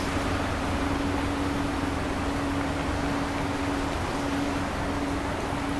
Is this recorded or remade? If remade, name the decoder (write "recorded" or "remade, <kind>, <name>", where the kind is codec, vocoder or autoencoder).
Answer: recorded